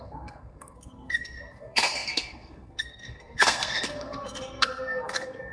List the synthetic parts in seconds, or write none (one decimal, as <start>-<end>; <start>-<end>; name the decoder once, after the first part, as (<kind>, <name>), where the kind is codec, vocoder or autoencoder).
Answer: 0.0-5.5 (codec, SNAC)